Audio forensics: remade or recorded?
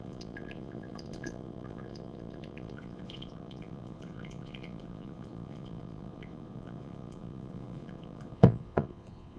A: remade